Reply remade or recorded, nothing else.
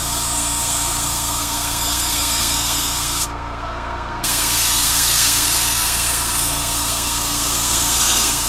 remade